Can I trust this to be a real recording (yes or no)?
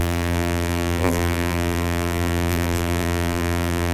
no